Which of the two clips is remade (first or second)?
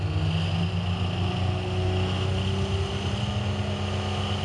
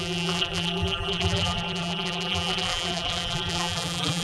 second